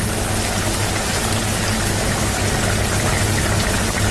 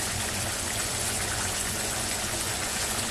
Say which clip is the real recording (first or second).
first